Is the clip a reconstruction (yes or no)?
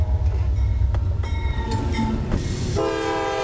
no